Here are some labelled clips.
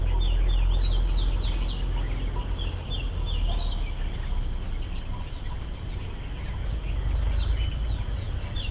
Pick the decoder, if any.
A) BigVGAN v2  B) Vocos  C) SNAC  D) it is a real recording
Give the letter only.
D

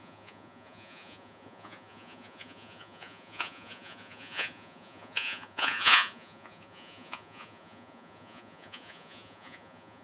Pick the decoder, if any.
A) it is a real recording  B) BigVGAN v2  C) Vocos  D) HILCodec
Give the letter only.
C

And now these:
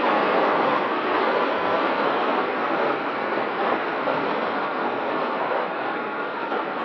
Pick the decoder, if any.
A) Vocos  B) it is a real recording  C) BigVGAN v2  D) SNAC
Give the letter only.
D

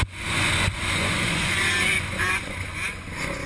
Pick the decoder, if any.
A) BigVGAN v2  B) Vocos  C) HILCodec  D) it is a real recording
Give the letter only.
B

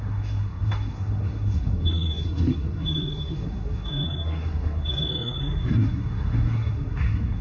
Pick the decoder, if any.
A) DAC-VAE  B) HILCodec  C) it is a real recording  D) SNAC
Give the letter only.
D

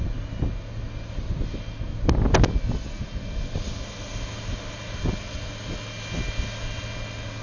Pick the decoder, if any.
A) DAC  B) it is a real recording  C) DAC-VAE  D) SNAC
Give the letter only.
B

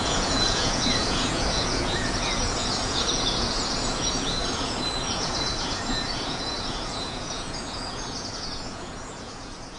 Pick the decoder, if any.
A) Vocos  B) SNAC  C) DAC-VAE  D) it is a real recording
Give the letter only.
A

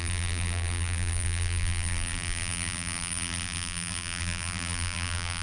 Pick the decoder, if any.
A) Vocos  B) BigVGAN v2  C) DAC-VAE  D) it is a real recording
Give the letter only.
B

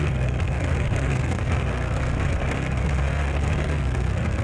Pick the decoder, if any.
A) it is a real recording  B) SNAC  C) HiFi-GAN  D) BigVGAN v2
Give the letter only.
B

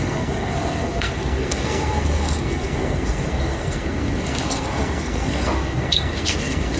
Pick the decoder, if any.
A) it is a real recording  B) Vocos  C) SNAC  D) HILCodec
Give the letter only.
C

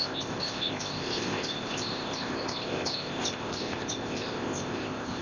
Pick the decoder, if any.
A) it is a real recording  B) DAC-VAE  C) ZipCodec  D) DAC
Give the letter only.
C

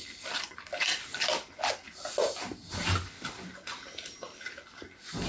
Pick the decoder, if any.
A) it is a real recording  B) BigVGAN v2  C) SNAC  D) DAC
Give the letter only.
A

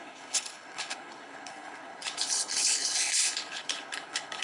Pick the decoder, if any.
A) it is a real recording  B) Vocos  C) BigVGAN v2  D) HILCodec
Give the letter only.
D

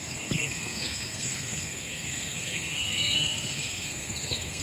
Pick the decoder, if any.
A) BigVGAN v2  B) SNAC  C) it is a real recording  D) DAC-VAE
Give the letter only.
B